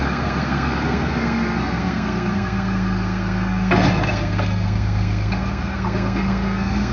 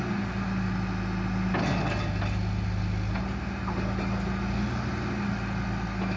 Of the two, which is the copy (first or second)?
first